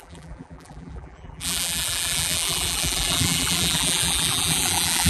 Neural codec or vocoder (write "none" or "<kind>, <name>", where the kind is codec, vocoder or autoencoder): vocoder, BigVGAN v2